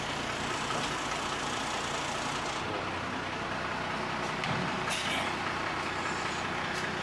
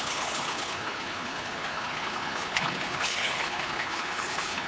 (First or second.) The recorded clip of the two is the first